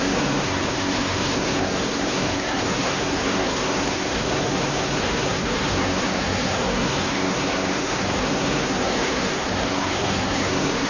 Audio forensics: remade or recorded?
remade